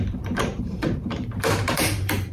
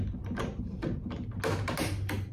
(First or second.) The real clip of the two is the second